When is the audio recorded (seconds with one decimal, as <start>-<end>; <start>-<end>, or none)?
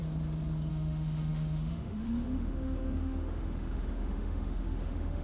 0.0-0.7